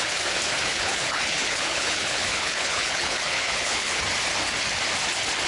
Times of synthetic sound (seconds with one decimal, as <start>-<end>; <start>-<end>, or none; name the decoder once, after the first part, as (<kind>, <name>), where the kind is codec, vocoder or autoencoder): 0.7-4.0 (codec, HILCodec)